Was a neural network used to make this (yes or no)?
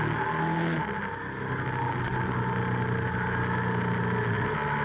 no